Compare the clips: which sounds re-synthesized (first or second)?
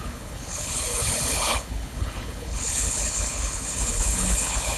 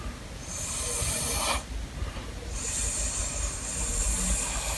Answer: first